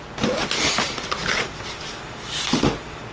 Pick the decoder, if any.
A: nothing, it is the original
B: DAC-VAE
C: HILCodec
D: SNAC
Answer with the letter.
A